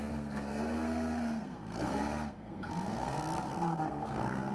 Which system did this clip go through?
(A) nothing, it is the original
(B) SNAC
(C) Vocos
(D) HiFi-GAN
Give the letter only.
B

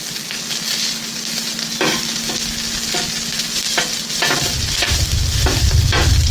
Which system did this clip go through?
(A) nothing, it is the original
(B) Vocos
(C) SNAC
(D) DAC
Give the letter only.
A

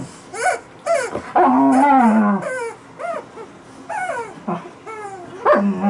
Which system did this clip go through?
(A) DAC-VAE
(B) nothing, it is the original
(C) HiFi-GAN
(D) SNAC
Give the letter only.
B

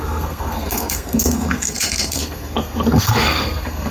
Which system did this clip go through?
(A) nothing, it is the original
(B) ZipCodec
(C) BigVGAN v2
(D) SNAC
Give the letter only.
D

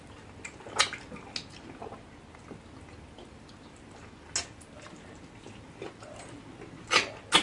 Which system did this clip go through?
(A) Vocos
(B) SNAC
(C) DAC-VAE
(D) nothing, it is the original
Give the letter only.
D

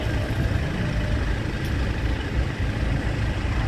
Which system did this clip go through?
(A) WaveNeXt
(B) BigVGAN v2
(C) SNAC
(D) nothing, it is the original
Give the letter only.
D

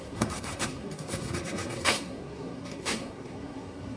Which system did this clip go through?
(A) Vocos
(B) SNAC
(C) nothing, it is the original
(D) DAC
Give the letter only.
B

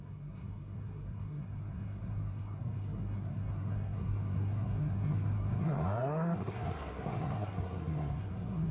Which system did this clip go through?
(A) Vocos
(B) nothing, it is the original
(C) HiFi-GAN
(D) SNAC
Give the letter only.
D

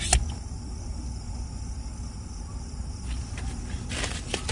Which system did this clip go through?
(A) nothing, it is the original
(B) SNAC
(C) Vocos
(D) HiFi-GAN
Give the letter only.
A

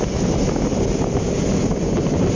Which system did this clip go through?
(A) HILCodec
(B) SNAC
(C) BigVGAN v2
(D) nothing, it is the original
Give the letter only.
D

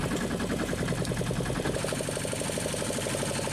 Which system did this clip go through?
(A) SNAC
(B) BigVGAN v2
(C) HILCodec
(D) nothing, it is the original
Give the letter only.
D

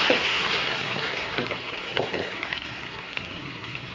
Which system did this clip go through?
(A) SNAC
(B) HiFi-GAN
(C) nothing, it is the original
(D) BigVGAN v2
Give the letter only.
A